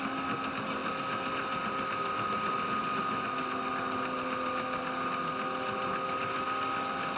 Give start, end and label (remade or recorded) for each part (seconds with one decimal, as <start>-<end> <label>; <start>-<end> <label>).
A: 0.0-7.2 recorded